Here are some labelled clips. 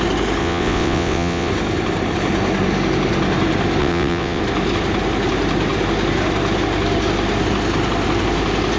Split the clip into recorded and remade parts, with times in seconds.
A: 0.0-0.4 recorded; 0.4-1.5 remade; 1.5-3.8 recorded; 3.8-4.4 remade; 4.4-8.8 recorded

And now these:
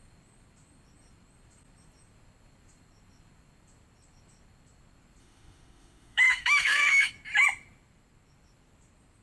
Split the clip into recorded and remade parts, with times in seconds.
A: 0.0-5.2 recorded; 5.2-7.1 remade; 7.1-9.2 recorded

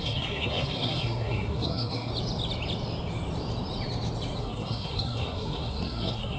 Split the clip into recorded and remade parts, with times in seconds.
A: 0.0-2.1 remade; 2.1-4.4 recorded; 4.4-6.4 remade

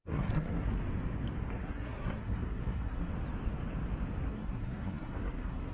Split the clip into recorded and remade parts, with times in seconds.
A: 0.0-0.8 remade; 0.8-1.5 recorded; 1.5-3.1 remade; 3.1-4.3 recorded; 4.3-5.7 remade

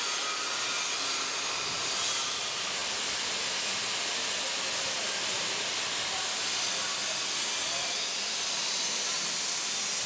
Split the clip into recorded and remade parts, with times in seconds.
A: 0.0-10.1 recorded

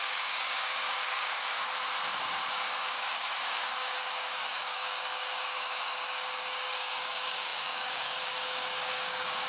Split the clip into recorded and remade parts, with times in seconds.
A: 0.0-1.6 remade; 1.6-2.5 recorded; 2.5-9.5 remade

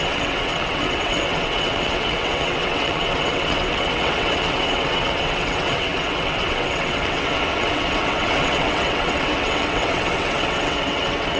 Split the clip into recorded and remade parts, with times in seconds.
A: 0.0-11.4 remade

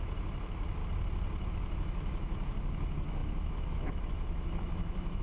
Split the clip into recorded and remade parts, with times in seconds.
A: 0.0-0.8 remade; 0.8-1.5 recorded; 1.5-5.2 remade